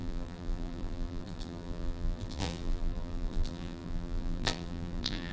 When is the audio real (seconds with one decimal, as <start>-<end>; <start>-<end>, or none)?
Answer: none